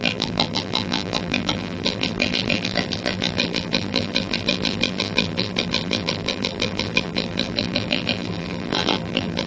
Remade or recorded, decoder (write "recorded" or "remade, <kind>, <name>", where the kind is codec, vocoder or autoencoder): remade, vocoder, BigVGAN v2